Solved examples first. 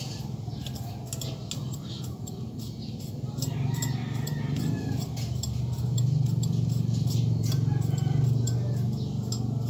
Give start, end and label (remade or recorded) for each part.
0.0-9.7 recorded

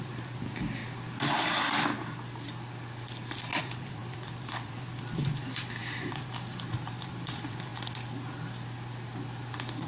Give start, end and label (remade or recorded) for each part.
0.0-0.8 remade; 0.8-3.6 recorded; 3.6-7.7 remade; 7.7-9.9 recorded

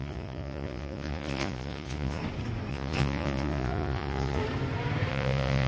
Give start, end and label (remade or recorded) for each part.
0.0-2.2 remade; 2.2-2.7 recorded; 2.7-4.4 remade; 4.4-5.1 recorded; 5.1-5.7 remade

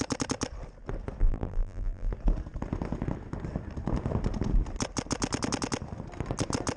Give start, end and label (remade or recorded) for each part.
0.0-1.2 recorded; 1.2-2.1 remade; 2.1-6.8 recorded

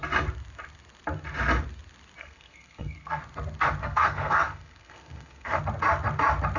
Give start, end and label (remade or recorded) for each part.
0.0-2.2 recorded; 2.2-3.2 remade; 3.2-3.8 recorded; 3.8-5.6 remade; 5.6-6.6 recorded